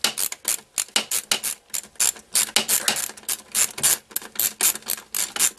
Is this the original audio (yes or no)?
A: yes